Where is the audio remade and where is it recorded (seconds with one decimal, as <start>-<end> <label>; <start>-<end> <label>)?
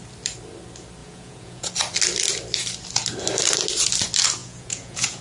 0.0-1.0 recorded; 1.0-1.7 remade; 1.7-4.4 recorded; 4.4-5.2 remade